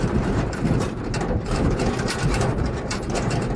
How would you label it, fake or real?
fake